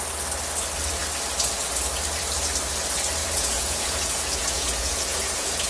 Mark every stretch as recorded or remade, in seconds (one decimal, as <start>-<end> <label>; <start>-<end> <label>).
0.0-3.2 recorded; 3.2-5.7 remade